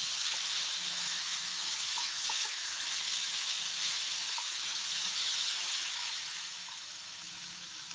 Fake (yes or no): yes